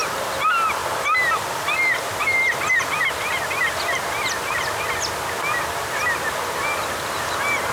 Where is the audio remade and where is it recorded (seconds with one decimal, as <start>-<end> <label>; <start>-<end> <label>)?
0.0-7.7 recorded